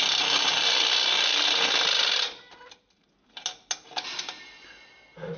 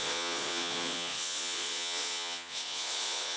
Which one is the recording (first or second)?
first